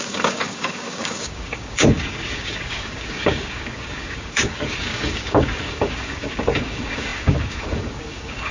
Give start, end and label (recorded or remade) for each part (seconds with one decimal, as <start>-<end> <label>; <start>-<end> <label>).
0.0-8.5 remade

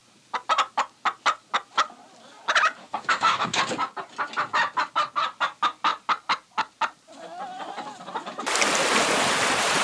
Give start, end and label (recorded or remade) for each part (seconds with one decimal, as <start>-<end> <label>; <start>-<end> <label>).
0.0-2.8 recorded; 2.8-3.6 remade; 3.6-9.8 recorded

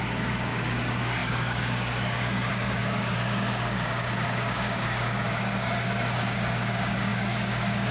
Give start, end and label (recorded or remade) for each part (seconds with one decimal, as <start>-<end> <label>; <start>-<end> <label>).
0.0-7.9 remade

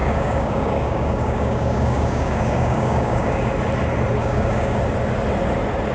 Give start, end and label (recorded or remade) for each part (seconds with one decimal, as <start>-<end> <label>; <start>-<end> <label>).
0.0-3.5 remade; 3.5-4.2 recorded; 4.2-4.8 remade; 4.8-5.9 recorded